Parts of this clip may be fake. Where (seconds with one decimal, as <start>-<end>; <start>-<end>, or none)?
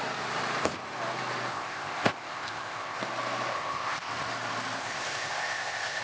1.5-3.0; 3.5-4.1; 4.8-6.0